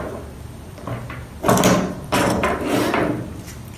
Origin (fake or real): real